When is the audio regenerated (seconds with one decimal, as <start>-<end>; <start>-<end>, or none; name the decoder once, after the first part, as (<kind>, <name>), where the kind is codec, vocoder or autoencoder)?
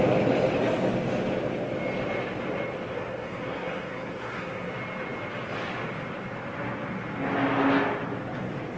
2.9-4.7 (codec, SNAC)